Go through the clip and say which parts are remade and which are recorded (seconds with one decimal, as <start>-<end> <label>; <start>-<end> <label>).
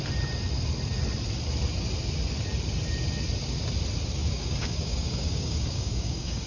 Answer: 0.0-4.2 recorded; 4.2-6.5 remade